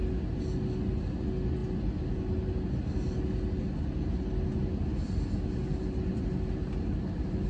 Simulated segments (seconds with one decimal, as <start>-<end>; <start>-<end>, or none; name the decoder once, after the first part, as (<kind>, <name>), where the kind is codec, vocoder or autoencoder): none